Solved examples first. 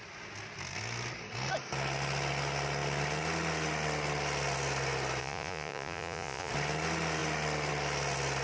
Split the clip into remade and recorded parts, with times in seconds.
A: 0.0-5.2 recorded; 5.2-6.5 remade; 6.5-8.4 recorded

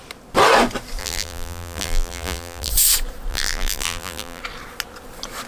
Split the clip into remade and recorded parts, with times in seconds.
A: 0.0-1.0 recorded; 1.0-2.7 remade; 2.7-3.3 recorded; 3.3-4.4 remade; 4.4-5.5 recorded

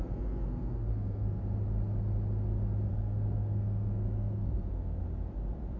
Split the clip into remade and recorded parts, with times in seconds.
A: 0.0-1.4 remade; 1.4-2.9 recorded; 2.9-5.0 remade; 5.0-5.8 recorded

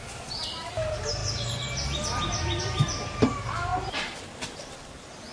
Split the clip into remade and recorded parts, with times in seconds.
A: 0.0-5.3 remade